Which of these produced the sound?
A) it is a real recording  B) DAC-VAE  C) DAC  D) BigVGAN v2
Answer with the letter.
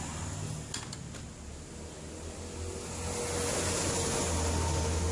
A